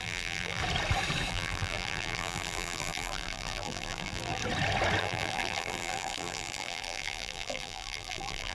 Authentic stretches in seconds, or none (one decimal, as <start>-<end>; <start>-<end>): 0.6-1.3; 4.4-5.0